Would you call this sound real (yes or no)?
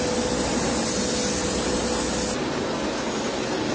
yes